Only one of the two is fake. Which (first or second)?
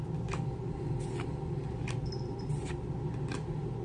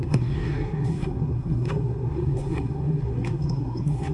second